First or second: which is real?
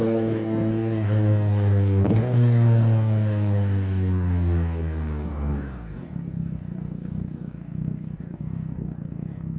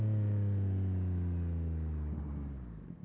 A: second